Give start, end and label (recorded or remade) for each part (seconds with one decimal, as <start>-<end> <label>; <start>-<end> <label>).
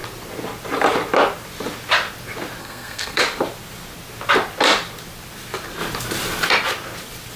0.0-2.6 recorded; 2.6-3.2 remade; 3.2-7.4 recorded